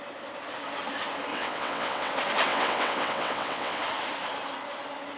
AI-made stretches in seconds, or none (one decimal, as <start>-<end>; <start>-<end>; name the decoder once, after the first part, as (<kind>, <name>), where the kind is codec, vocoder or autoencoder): 1.3-2.1 (vocoder, WaveNeXt); 2.5-3.8